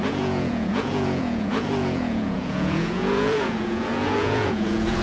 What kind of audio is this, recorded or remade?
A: remade